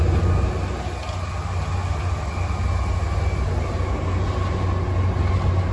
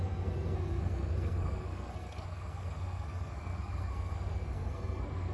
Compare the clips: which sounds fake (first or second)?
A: second